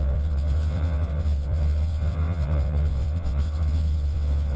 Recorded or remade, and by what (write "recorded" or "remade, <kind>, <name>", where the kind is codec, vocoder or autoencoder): remade, vocoder, WaveNeXt